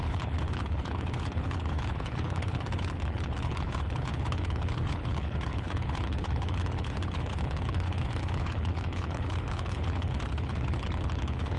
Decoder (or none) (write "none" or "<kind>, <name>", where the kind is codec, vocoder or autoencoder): codec, HILCodec